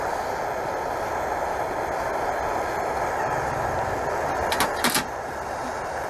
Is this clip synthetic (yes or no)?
no